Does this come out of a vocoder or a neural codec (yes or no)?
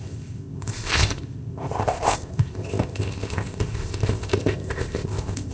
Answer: yes